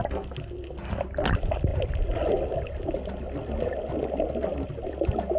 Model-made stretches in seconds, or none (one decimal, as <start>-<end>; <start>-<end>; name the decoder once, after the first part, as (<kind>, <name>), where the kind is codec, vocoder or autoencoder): none